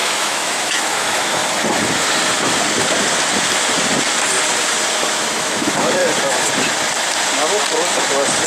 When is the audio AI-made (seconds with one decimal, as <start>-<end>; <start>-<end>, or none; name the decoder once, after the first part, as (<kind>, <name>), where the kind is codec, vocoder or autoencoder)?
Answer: 0.0-1.4 (autoencoder, DAC-VAE); 4.9-6.0